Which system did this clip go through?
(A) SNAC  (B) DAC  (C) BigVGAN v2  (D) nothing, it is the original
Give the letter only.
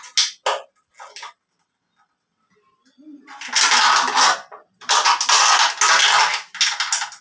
D